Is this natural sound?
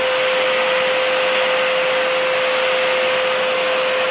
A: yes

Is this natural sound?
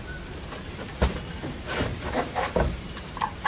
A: no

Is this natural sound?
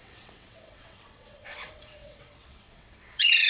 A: no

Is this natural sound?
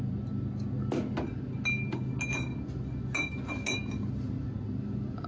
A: yes